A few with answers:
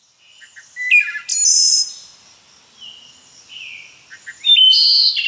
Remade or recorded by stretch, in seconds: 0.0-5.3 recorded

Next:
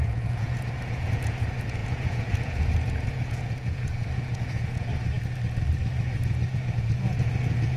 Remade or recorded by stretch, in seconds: 0.0-4.9 remade; 4.9-6.0 recorded; 6.0-7.8 remade

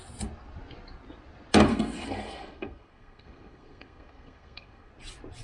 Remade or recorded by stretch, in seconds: 0.0-1.7 recorded; 1.7-4.9 remade; 4.9-5.4 recorded

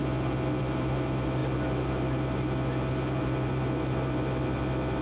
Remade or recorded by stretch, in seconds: 0.0-5.0 recorded

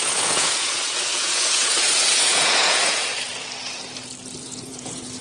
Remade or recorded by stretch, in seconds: 0.0-3.3 remade; 3.3-4.4 recorded; 4.4-5.2 remade